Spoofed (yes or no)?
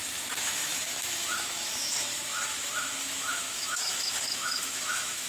yes